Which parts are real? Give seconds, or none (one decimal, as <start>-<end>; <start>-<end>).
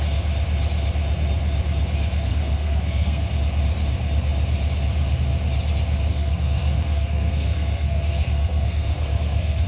0.0-2.3; 3.3-6.1